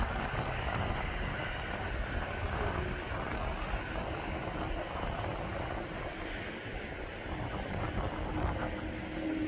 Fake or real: real